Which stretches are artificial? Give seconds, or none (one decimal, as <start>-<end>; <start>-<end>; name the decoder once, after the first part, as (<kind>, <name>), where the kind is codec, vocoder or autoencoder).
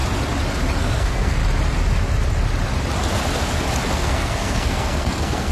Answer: 0.8-1.4 (codec, SNAC); 3.9-5.5